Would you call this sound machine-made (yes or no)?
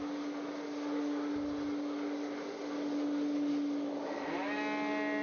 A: no